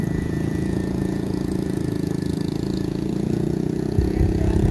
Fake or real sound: fake